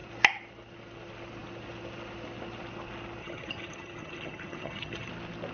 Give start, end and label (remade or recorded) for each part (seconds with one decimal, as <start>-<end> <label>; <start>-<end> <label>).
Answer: 0.0-3.2 recorded; 3.2-5.1 remade; 5.1-5.5 recorded